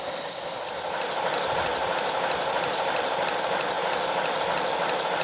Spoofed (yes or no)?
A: no